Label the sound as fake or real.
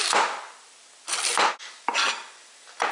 real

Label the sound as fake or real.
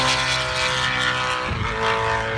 real